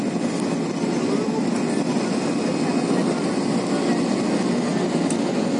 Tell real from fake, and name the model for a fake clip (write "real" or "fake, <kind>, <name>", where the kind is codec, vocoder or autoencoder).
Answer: real